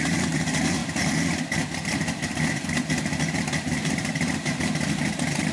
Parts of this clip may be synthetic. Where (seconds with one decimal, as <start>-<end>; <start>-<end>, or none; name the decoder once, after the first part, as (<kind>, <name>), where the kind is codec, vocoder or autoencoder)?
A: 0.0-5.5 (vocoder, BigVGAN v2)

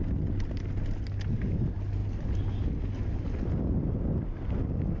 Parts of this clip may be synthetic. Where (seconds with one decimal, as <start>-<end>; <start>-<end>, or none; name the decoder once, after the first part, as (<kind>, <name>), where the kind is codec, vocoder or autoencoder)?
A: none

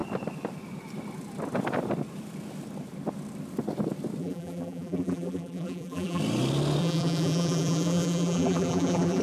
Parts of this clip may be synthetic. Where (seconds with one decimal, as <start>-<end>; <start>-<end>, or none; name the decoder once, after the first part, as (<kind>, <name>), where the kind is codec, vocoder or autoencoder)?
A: 4.2-6.2 (vocoder, BigVGAN v2); 6.8-9.2

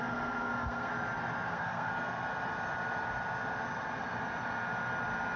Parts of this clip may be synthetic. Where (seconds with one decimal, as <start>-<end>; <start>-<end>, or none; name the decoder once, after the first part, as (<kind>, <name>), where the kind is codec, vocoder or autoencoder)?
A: 0.0-0.9 (codec, SNAC); 1.5-1.9

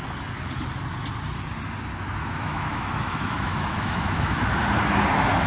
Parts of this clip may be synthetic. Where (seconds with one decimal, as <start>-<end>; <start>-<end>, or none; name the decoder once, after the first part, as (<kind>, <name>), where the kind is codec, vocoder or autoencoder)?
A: 2.2-4.5 (autoencoder, DAC-VAE)

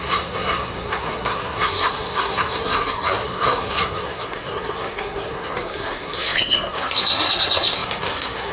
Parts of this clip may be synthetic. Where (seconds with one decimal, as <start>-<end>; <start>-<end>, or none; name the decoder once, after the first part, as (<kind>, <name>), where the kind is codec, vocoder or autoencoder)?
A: 0.0-8.5 (codec, SNAC)

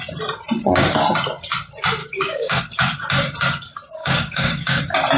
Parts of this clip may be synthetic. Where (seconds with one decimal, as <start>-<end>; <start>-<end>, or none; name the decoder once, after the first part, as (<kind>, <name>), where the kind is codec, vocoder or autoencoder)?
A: 2.0-2.6 (codec, DAC); 4.0-4.8